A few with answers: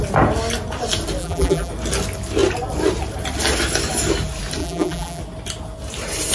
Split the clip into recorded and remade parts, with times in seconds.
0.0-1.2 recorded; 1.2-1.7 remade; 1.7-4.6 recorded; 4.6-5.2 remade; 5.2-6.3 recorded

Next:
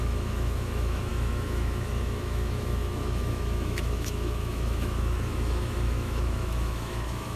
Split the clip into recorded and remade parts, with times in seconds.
0.0-7.4 remade